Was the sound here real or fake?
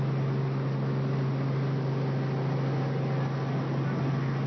real